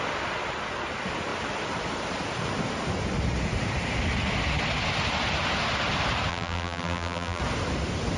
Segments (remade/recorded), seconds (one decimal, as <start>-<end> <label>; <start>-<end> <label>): 0.0-6.3 recorded; 6.3-7.4 remade; 7.4-8.2 recorded